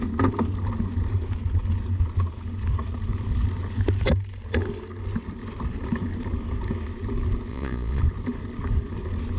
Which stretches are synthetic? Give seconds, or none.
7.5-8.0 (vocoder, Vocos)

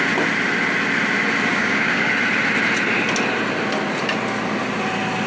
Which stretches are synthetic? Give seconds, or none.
1.5-2.1 (codec, DAC)

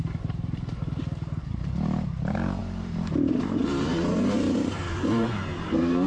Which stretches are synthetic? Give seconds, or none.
0.0-6.1 (vocoder, BigVGAN v2)